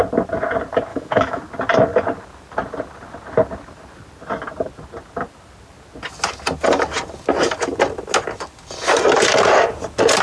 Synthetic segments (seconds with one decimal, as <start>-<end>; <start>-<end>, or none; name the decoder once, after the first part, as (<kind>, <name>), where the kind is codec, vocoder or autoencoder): 0.9-1.4 (autoencoder, DAC-VAE)